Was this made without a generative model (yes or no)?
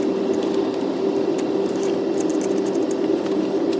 yes